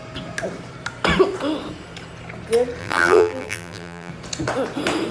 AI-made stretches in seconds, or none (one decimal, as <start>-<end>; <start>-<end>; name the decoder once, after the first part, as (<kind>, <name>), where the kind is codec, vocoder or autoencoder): 2.8-4.1 (vocoder, BigVGAN v2)

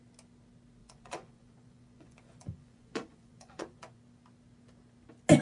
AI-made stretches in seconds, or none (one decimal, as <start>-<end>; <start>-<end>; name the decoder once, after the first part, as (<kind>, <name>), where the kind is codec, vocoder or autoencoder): 0.8-4.0 (vocoder, Vocos)